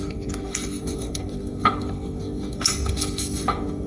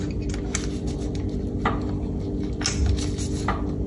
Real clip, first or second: second